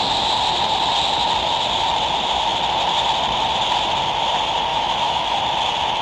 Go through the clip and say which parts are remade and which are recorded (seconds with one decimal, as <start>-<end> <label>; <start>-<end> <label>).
0.0-4.7 recorded; 4.7-5.4 remade; 5.4-6.0 recorded